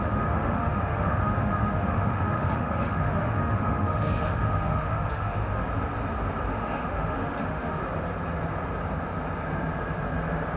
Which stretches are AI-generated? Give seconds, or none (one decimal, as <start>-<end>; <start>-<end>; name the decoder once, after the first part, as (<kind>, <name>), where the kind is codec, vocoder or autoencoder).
0.0-5.6 (autoencoder, DAC-VAE); 6.5-7.8